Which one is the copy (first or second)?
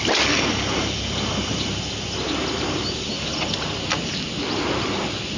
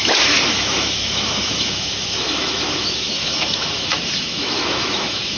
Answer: second